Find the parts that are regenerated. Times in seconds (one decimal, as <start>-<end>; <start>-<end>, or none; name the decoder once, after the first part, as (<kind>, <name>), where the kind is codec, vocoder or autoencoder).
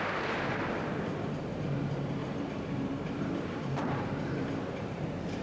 2.2-5.4 (vocoder, BigVGAN v2)